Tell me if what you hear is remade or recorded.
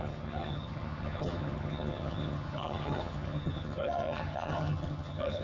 remade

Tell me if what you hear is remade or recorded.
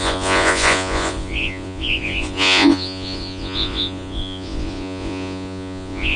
remade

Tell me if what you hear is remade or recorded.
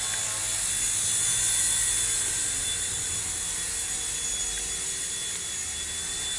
recorded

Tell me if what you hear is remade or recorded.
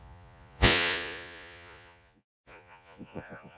remade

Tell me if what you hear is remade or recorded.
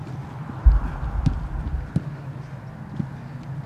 recorded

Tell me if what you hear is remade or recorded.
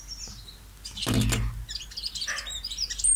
recorded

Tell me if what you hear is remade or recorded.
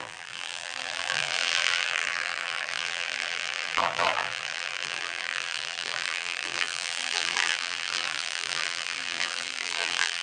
remade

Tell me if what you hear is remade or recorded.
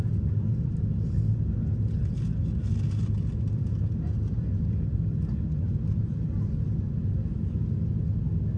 recorded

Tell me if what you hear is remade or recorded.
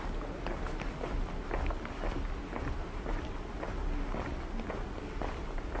recorded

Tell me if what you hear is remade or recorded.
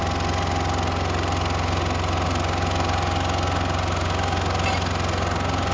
recorded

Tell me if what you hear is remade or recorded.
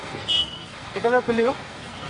remade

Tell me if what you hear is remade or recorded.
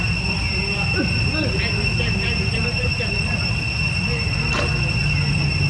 recorded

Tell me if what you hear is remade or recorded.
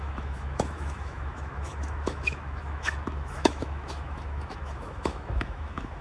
remade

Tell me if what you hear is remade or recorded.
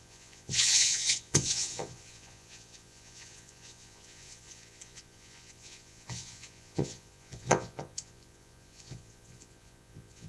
remade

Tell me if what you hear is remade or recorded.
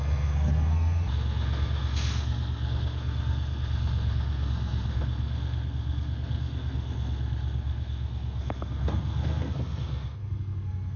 remade